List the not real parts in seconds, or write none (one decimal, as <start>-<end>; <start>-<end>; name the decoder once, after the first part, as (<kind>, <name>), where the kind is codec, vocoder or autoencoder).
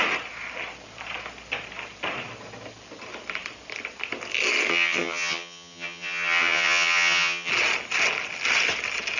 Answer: 4.7-7.5 (vocoder, HiFi-GAN)